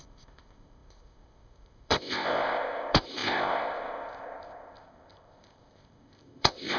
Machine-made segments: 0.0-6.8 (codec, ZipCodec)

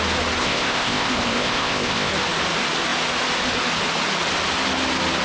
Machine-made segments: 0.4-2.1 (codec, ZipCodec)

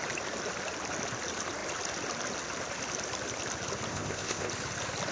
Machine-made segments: 3.9-4.5 (codec, ZipCodec)